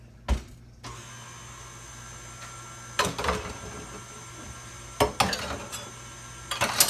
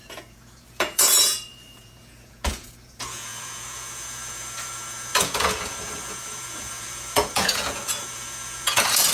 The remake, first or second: second